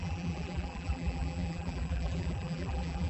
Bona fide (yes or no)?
no